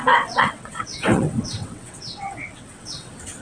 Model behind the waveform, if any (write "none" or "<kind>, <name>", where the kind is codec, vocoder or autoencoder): vocoder, WaveNeXt